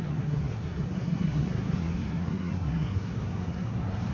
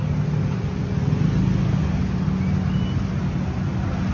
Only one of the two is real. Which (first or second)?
second